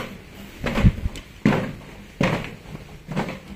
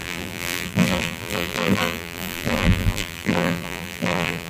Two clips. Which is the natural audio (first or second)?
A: first